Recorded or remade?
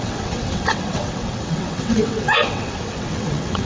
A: remade